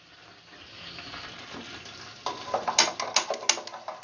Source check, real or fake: real